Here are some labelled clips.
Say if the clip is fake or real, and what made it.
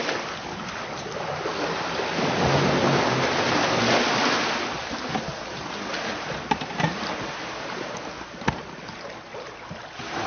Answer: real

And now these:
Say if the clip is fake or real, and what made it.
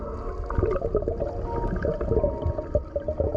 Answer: real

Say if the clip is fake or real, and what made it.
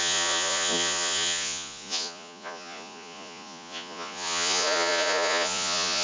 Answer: fake, vocoder, Vocos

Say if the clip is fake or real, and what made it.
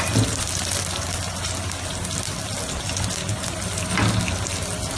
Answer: real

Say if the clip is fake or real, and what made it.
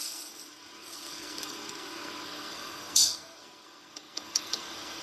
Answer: fake, codec, SNAC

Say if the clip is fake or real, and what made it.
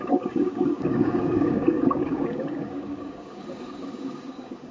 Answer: fake, codec, DAC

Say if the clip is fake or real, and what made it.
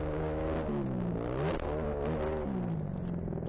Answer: real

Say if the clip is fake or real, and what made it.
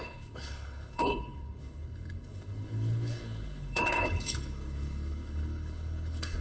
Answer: fake, codec, HILCodec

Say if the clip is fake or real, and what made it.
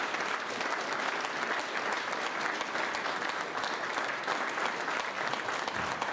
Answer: real